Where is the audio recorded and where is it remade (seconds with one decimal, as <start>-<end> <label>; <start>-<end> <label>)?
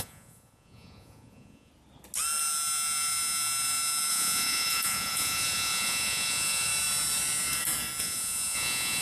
0.0-1.7 remade; 1.7-4.1 recorded; 4.1-6.7 remade; 6.7-8.0 recorded; 8.0-9.0 remade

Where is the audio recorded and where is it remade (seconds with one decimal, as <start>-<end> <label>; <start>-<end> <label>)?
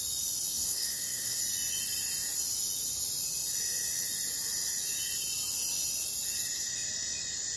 0.0-0.5 recorded; 0.5-1.4 remade; 1.4-7.6 recorded